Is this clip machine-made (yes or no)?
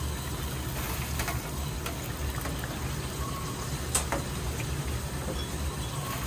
no